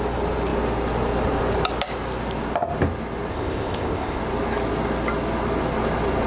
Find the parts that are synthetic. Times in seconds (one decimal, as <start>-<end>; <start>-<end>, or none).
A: 3.3-4.2